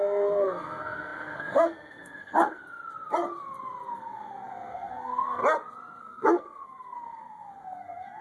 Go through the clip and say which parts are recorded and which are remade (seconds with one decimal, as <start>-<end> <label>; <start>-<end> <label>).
0.0-2.6 remade; 2.6-3.9 recorded; 3.9-5.4 remade; 5.4-6.0 recorded; 6.0-8.2 remade